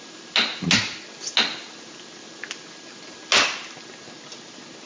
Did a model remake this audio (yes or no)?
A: no